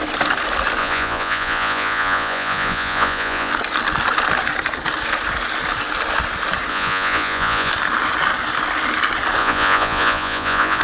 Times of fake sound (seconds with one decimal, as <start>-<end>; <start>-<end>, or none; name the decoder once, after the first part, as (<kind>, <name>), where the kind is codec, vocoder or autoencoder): 0.8-3.5 (vocoder, Vocos); 6.7-7.7; 9.4-10.8